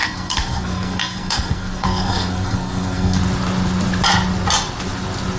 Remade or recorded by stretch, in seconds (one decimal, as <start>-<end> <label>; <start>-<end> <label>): 0.0-3.2 remade; 3.2-5.4 recorded